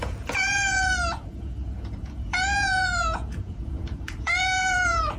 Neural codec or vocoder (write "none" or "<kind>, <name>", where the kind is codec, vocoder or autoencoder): vocoder, Vocos